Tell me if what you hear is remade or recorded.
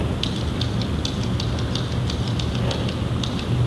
recorded